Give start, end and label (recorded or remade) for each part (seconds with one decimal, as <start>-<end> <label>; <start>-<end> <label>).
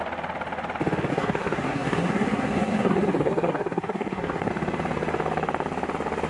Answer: 0.0-1.1 recorded; 1.1-4.5 remade; 4.5-6.3 recorded